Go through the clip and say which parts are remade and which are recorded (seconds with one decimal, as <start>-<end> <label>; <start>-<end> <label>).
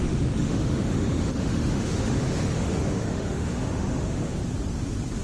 0.0-4.4 remade; 4.4-5.2 recorded